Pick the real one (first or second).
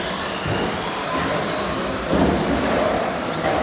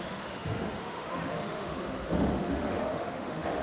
first